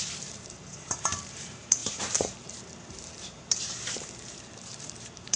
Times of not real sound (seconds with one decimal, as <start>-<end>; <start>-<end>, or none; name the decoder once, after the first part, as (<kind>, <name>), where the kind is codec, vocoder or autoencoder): 0.0-5.4 (vocoder, BigVGAN v2)